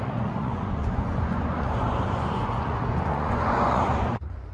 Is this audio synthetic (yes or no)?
yes